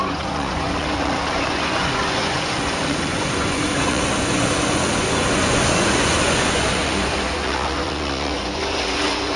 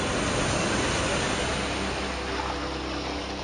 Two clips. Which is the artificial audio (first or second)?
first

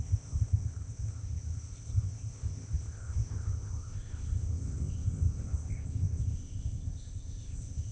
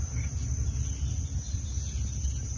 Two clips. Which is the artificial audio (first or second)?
first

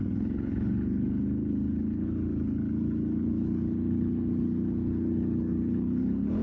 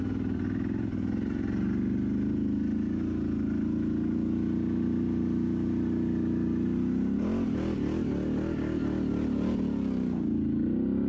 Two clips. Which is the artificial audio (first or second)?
first